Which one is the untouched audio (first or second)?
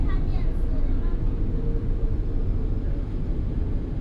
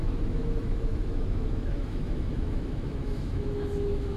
first